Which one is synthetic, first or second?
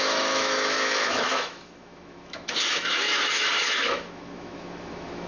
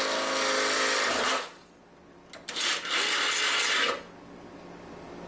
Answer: first